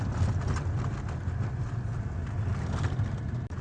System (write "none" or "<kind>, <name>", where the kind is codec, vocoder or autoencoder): none